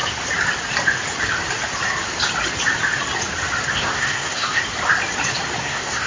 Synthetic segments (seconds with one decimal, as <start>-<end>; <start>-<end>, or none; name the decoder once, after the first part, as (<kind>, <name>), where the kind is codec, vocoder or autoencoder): 3.7-4.6 (codec, SNAC); 5.6-6.1

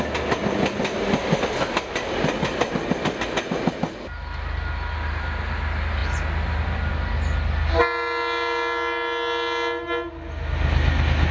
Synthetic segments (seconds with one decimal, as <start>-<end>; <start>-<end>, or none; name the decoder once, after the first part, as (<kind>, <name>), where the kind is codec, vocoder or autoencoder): none

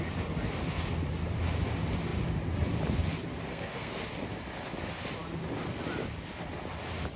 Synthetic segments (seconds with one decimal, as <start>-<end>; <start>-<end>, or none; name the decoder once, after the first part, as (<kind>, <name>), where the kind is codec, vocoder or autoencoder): 3.5-4.0 (codec, SNAC)

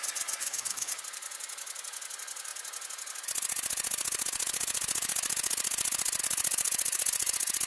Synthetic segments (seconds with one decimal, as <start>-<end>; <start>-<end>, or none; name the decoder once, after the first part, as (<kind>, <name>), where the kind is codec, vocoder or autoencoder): 0.4-0.9 (codec, DAC)